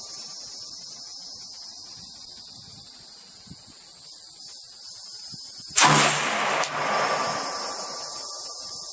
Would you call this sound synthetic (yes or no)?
no